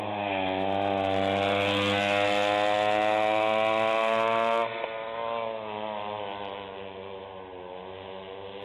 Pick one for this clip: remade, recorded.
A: recorded